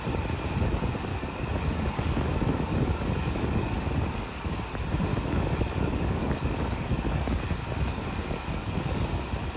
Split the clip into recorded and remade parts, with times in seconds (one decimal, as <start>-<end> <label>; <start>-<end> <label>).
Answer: 0.0-1.1 recorded; 1.1-4.6 remade; 4.6-5.1 recorded; 5.1-9.2 remade; 9.2-9.6 recorded